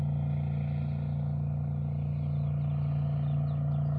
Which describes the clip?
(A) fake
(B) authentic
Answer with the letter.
B